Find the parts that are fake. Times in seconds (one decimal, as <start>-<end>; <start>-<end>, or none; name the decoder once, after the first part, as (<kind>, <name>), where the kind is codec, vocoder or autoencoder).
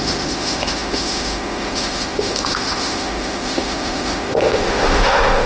0.0-5.5 (autoencoder, DAC-VAE)